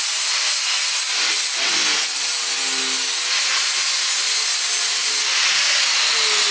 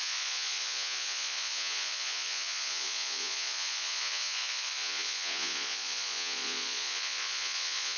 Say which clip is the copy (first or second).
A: second